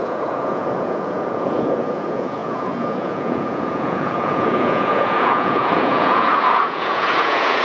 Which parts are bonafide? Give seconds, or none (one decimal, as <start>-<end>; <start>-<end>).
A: none